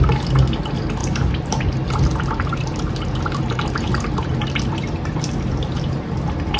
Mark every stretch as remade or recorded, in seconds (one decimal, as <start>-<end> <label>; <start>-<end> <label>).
0.0-1.0 recorded; 1.0-1.7 remade; 1.7-2.1 recorded; 2.1-6.1 remade; 6.1-6.6 recorded

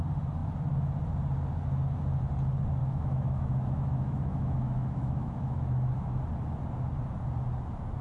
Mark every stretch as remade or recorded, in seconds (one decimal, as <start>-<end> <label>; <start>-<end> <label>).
0.0-2.8 recorded; 2.8-6.2 remade; 6.2-8.0 recorded

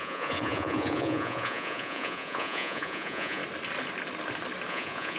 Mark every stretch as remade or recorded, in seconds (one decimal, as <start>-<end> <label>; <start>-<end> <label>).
0.0-3.4 remade; 3.4-4.7 recorded; 4.7-5.2 remade